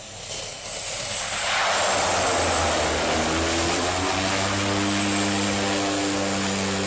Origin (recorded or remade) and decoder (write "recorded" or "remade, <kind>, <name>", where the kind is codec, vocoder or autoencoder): recorded